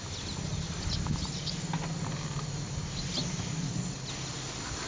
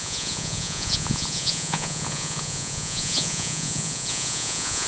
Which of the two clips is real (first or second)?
first